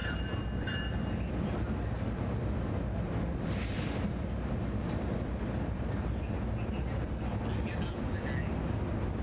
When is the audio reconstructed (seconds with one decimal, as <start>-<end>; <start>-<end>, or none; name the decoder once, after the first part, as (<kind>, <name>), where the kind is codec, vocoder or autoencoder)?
0.0-1.8 (vocoder, BigVGAN v2)